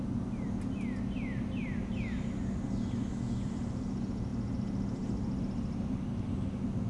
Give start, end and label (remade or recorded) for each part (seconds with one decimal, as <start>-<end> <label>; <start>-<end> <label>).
0.0-6.9 recorded